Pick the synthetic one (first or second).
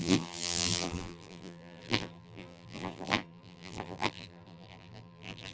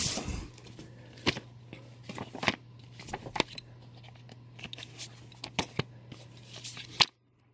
first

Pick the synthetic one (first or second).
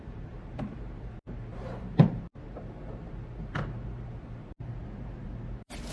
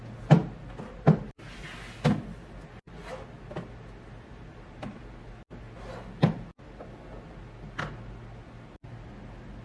first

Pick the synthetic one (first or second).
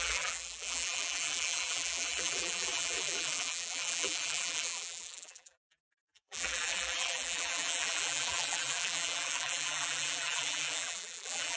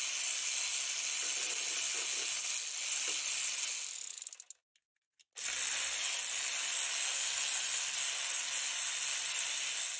first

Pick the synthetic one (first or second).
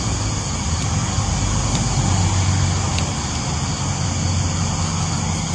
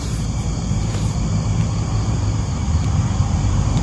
second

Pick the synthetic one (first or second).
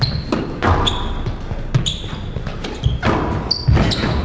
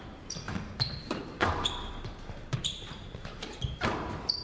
second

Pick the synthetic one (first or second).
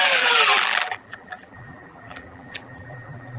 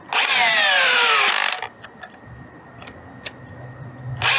first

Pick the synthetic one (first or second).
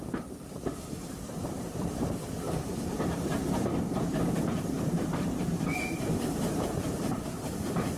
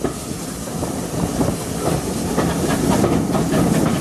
first